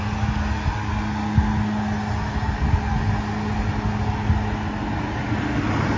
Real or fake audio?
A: real